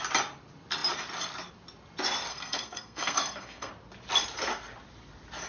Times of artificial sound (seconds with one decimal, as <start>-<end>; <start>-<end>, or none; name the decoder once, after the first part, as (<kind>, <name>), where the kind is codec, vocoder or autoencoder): 2.3-3.7 (codec, SNAC)